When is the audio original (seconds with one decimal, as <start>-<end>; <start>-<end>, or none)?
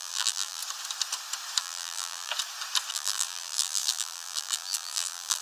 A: 0.6-1.6; 2.3-2.9